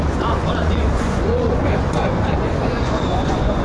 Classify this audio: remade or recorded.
remade